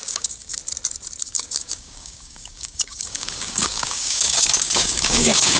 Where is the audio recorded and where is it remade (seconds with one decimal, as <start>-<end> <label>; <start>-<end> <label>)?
0.0-0.6 remade; 0.6-1.2 recorded; 1.2-5.6 remade